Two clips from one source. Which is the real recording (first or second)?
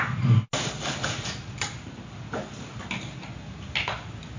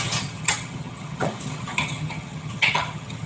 first